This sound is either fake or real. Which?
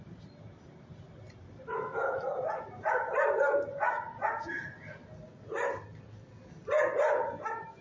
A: real